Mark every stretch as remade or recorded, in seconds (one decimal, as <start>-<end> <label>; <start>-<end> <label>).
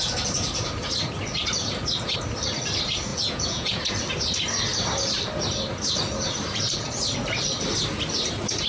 0.0-3.1 recorded; 3.1-3.8 remade; 3.8-8.7 recorded